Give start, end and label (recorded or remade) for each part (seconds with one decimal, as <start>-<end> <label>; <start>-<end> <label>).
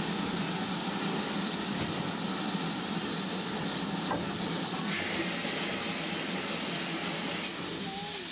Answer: 0.0-8.3 recorded